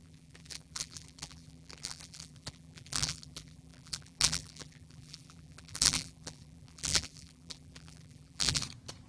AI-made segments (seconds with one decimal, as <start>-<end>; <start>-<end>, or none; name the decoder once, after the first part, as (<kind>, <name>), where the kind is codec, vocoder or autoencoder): 0.0-8.6 (vocoder, BigVGAN v2)